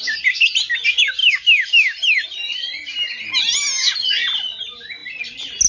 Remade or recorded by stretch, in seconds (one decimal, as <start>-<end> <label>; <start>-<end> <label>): 0.0-5.7 recorded